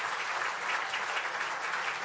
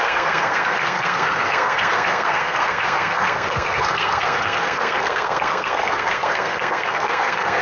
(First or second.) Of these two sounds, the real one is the first